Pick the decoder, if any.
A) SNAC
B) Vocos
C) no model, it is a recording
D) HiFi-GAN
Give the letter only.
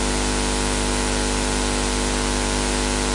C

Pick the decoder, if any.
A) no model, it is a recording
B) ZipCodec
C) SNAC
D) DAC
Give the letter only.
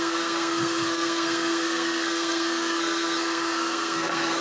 C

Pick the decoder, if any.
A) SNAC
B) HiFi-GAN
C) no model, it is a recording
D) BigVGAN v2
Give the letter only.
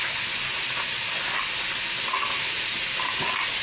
C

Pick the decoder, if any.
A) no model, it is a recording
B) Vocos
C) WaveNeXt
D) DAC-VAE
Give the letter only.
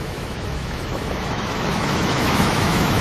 D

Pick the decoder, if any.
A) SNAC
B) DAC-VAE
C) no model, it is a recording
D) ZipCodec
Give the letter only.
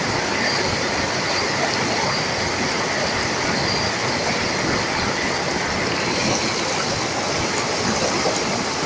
C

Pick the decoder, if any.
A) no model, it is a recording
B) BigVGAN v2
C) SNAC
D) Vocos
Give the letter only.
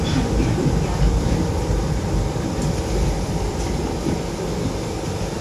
B